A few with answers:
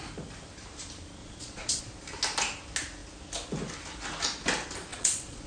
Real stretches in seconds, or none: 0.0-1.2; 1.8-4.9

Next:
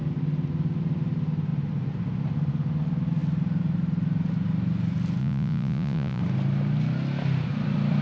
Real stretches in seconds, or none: 0.0-5.2; 6.2-8.0

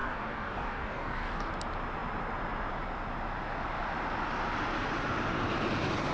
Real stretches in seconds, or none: 1.5-6.1